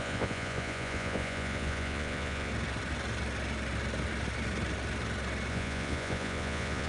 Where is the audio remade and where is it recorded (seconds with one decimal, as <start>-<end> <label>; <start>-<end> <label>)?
0.0-2.5 remade; 2.5-5.5 recorded; 5.5-6.9 remade